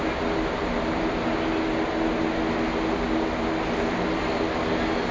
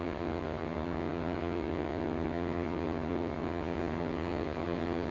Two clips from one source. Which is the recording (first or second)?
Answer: first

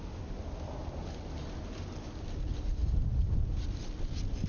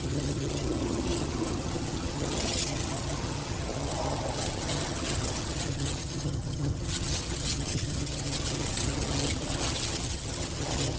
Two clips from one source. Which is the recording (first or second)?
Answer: first